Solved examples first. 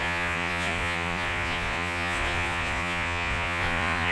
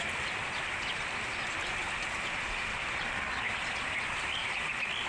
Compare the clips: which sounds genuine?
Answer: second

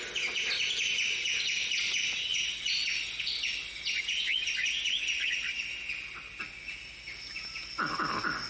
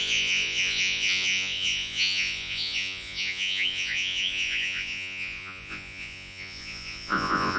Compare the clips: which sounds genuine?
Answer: first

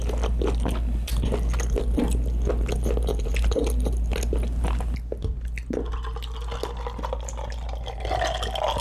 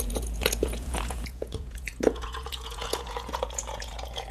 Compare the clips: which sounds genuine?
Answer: first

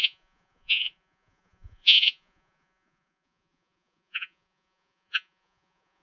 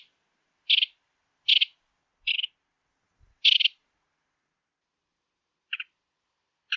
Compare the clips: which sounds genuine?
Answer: second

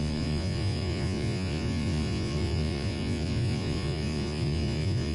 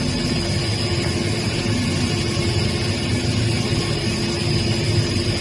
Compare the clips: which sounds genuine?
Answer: second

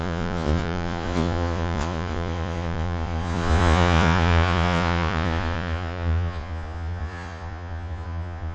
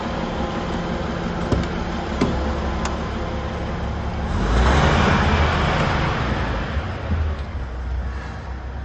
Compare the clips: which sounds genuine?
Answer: second